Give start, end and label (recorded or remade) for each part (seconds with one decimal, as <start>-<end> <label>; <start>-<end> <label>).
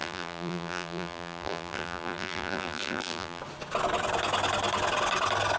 0.0-3.4 remade; 3.4-5.6 recorded